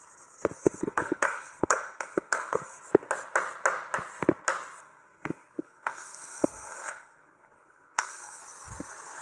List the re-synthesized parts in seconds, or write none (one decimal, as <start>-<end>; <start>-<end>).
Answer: 0.6-2.8; 4.8-8.4